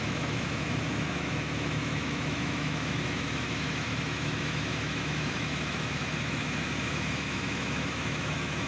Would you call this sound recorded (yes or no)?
no